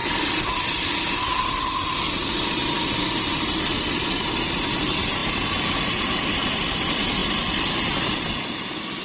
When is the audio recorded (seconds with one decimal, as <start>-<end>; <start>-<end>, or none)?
0.0-5.2; 6.5-9.0